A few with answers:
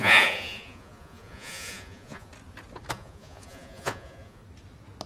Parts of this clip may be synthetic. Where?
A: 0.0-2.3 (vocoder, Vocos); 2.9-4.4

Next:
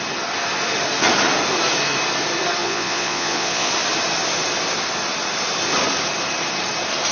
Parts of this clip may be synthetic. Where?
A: 2.6-3.7 (vocoder, Vocos)

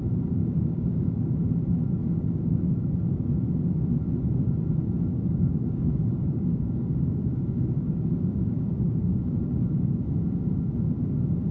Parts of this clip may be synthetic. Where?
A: 0.4-1.2 (codec, DAC); 2.0-2.6; 5.1-10.2

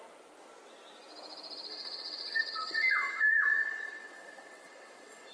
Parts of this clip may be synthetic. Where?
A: 1.7-5.3 (vocoder, WaveNeXt)